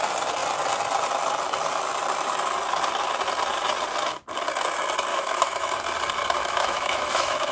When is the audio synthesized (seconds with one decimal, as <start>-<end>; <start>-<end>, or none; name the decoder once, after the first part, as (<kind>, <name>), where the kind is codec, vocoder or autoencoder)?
5.1-5.8 (autoencoder, DAC-VAE); 6.4-7.5